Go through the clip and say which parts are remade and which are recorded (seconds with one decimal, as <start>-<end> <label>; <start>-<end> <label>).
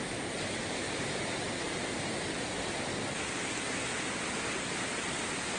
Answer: 0.0-5.6 recorded